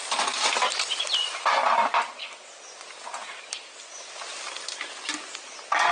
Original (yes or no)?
yes